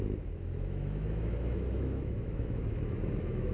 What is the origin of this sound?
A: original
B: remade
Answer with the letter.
B